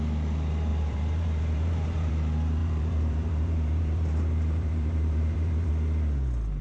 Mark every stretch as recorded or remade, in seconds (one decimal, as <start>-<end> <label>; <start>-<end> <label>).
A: 0.0-0.7 recorded; 0.7-2.1 remade; 2.1-2.6 recorded; 2.6-5.7 remade; 5.7-6.6 recorded